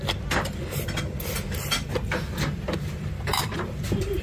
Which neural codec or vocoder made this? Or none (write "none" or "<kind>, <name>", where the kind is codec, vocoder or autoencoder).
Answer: vocoder, BigVGAN v2